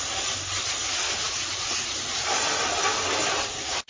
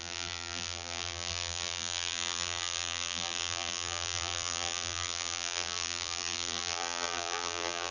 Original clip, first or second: first